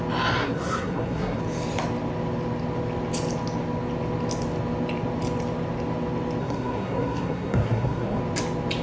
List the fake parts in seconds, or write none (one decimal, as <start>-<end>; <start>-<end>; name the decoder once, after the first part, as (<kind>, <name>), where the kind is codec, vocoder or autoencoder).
0.4-1.4 (codec, SNAC); 6.4-8.2